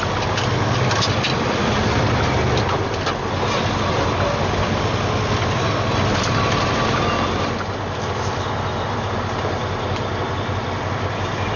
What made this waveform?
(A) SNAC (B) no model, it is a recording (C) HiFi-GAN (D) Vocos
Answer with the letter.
B